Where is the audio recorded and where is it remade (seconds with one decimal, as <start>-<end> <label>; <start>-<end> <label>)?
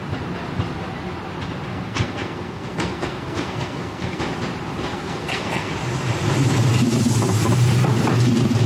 0.0-1.7 recorded; 1.7-4.2 remade; 4.2-4.9 recorded; 4.9-5.7 remade; 5.7-8.7 recorded